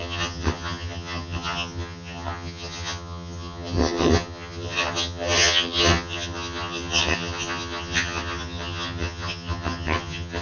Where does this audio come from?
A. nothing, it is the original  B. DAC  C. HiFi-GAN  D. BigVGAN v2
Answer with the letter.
C